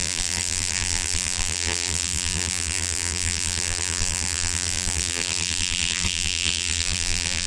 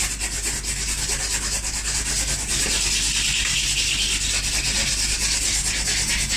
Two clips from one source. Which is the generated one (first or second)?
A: first